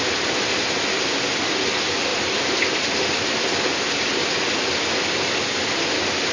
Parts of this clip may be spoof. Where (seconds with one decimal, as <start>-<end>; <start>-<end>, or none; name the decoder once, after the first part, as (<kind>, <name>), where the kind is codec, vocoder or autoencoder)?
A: 2.1-2.6 (vocoder, BigVGAN v2)